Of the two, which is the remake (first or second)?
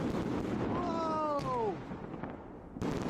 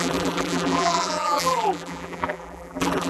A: second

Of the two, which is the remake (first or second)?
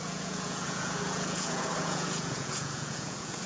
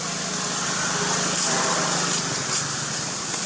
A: first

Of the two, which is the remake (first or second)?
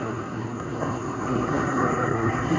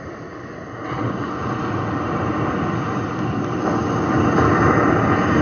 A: first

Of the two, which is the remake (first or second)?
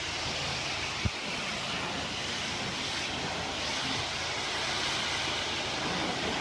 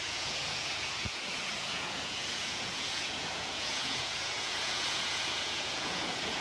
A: second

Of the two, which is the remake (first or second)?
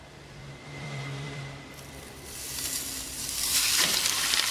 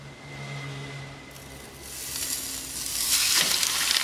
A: first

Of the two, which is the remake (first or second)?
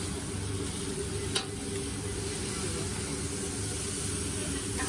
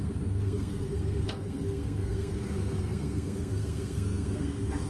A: second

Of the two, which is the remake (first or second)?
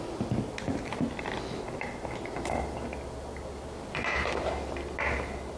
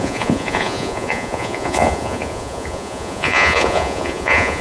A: second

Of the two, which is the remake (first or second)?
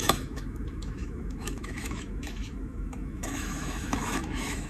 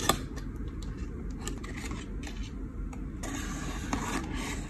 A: first